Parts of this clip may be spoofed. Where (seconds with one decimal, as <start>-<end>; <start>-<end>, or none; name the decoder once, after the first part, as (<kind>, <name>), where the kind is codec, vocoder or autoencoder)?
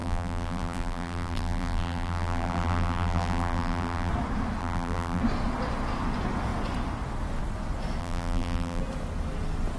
0.0-4.1 (vocoder, BigVGAN v2); 4.6-5.2; 8.0-8.8